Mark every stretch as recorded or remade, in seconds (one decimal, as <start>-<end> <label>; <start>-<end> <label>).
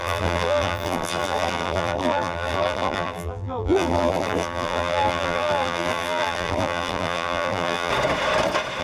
0.0-7.9 remade; 7.9-8.8 recorded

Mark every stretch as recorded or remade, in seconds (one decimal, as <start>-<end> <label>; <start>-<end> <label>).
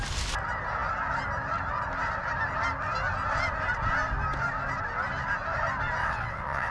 0.0-6.0 recorded; 6.0-6.7 remade